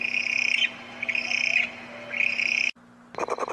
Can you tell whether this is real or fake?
real